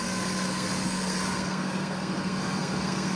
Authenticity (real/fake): fake